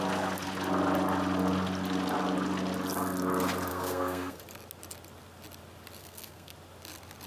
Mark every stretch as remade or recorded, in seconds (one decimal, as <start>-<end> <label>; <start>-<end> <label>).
0.0-3.7 recorded; 3.7-4.4 remade; 4.4-6.0 recorded; 6.0-6.5 remade; 6.5-7.3 recorded